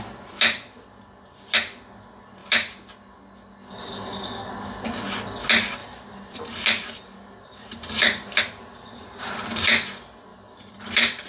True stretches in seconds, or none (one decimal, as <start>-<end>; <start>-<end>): 0.0-5.8; 9.3-10.3